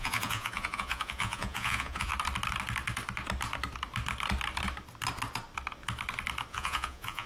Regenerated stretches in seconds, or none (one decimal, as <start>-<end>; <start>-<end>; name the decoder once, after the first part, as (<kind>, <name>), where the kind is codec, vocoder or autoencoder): 0.0-2.1 (vocoder, Vocos); 6.5-7.3